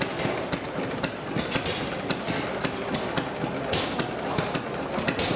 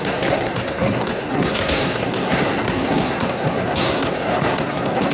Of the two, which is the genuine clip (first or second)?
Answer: first